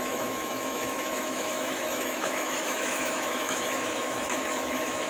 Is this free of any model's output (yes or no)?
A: no